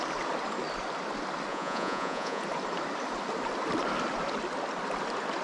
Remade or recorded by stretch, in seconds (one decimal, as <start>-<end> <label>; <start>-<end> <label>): 0.0-1.5 recorded; 1.5-2.4 remade; 2.4-5.4 recorded